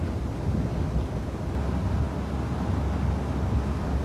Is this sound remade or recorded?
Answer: recorded